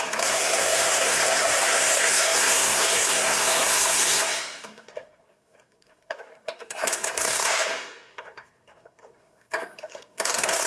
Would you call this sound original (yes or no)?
no